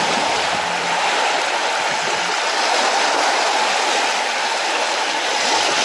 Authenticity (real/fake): real